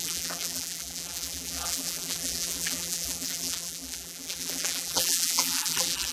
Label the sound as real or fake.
fake